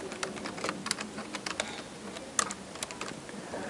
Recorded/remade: recorded